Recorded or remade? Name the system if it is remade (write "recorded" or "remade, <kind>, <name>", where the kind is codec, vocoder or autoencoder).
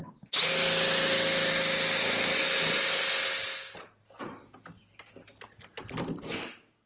recorded